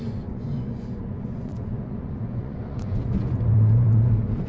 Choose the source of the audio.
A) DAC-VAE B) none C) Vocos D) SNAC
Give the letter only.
C